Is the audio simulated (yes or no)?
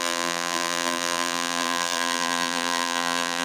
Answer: yes